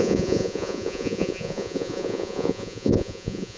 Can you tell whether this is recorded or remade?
remade